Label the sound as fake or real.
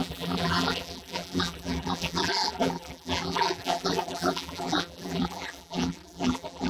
fake